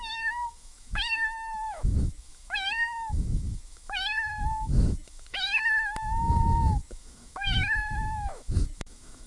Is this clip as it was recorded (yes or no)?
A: no